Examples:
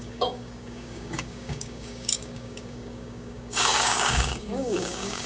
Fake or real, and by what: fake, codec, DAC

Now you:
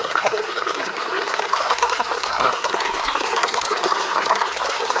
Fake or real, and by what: fake, codec, SNAC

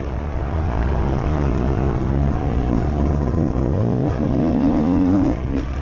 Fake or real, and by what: fake, vocoder, Vocos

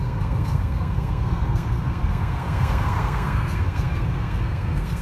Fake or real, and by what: fake, codec, SNAC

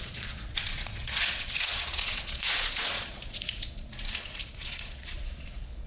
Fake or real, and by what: fake, vocoder, Vocos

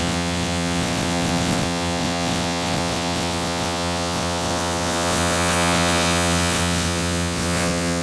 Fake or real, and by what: fake, vocoder, WaveNeXt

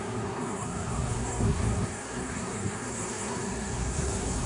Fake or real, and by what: fake, codec, SNAC